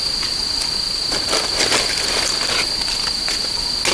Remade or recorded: recorded